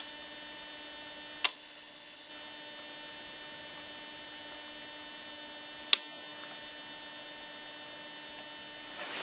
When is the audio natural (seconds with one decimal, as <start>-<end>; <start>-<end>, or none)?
0.0-1.5; 2.3-9.2